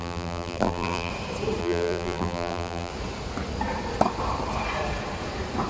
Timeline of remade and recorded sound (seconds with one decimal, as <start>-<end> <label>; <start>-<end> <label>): 0.0-1.1 remade; 1.1-1.6 recorded; 1.6-2.9 remade; 2.9-5.7 recorded